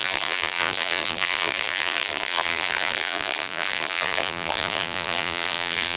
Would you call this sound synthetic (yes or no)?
yes